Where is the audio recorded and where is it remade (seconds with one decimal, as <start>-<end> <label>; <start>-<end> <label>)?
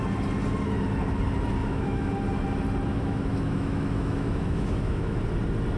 0.0-1.6 recorded; 1.6-2.1 remade; 2.1-2.9 recorded; 2.9-5.2 remade; 5.2-5.8 recorded